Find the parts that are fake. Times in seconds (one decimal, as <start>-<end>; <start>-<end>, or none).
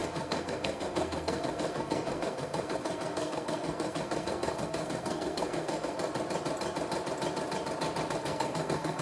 0.0-6.1; 8.1-9.0